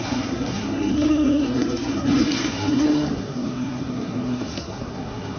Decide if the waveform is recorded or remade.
remade